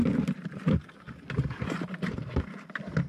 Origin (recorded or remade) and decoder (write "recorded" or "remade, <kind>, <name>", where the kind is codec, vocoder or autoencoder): recorded